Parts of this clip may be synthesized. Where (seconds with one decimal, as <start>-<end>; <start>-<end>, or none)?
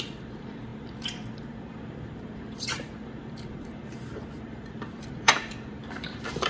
0.0-6.5